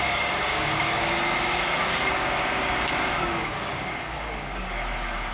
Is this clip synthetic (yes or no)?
yes